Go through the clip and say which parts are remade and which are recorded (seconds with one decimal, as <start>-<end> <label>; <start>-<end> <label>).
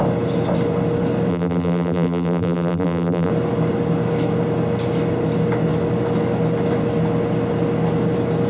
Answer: 0.0-1.3 recorded; 1.3-3.3 remade; 3.3-8.5 recorded